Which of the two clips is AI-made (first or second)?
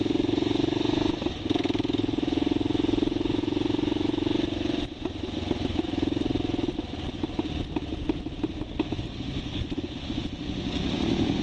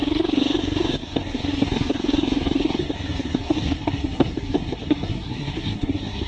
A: second